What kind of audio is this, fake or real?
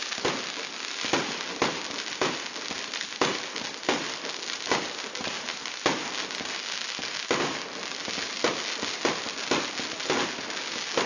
real